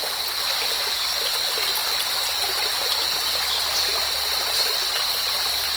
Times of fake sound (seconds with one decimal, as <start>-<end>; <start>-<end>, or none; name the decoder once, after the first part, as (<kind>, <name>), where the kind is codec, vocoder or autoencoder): 4.4-5.2 (vocoder, BigVGAN v2)